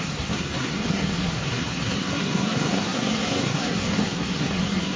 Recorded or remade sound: remade